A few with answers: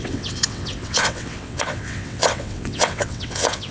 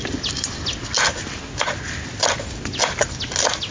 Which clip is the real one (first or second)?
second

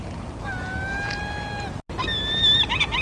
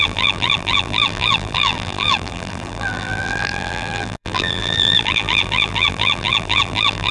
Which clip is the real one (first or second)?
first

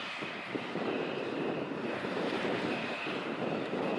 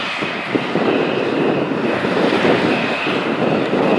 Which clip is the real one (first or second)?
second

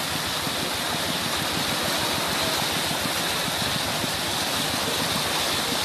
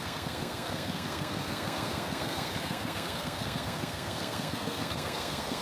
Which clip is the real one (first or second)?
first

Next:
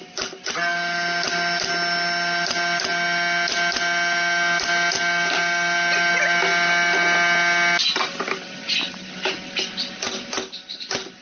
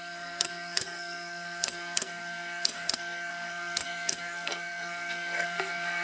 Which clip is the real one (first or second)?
first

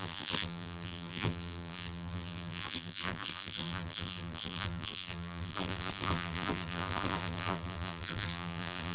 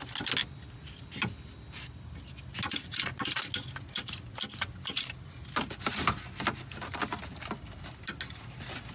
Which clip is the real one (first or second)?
second